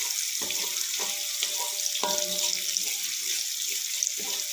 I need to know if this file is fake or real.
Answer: real